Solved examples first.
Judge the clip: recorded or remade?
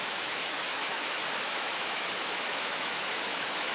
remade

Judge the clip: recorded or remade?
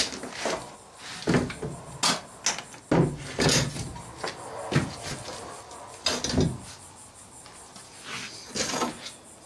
recorded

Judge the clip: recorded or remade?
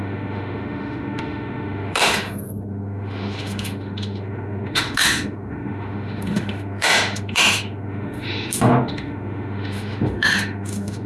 remade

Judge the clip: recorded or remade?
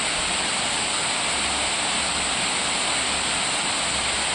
recorded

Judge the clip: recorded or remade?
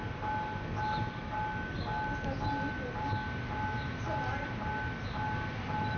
recorded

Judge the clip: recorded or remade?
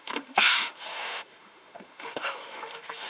remade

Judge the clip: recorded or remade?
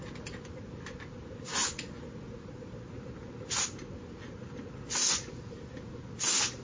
recorded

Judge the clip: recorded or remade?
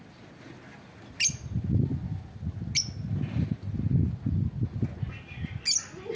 recorded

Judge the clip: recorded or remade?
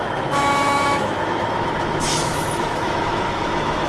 remade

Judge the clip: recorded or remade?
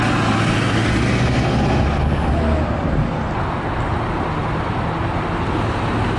recorded